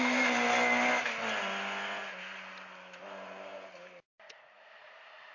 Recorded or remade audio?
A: recorded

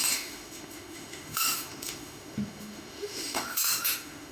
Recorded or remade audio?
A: remade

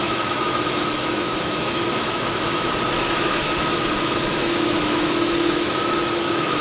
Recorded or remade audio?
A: remade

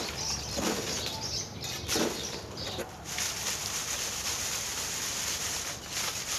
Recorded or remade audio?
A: recorded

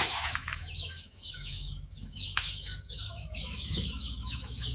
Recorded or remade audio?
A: remade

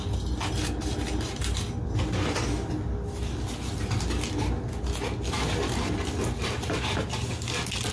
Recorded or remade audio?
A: recorded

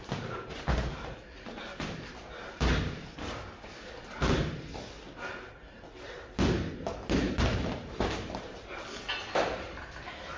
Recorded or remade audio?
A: recorded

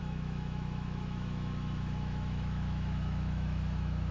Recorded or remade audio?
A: remade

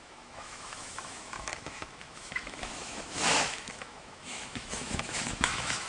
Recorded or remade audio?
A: remade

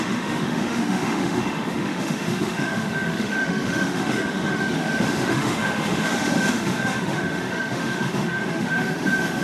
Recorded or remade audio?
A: remade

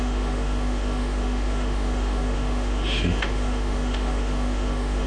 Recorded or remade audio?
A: remade